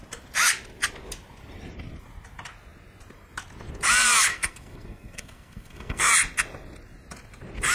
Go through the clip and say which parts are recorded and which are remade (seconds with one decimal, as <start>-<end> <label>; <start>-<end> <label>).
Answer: 0.0-4.3 recorded; 4.3-6.1 remade; 6.1-7.7 recorded